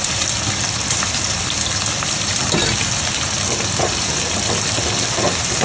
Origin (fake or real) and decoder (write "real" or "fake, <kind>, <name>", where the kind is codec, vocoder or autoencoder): real